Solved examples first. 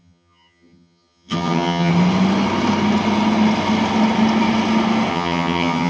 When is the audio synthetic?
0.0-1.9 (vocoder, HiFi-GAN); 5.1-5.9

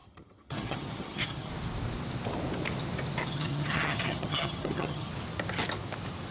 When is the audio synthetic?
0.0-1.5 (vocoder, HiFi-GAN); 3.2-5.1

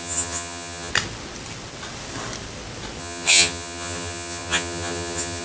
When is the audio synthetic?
0.0-0.9 (vocoder, HiFi-GAN); 3.0-5.4

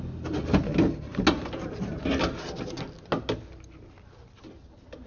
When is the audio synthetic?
none

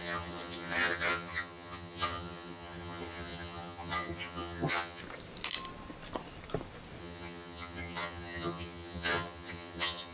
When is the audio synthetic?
0.0-5.0 (vocoder, HiFi-GAN); 7.0-10.1

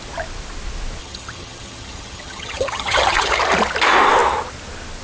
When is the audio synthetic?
1.0-3.4 (vocoder, HiFi-GAN)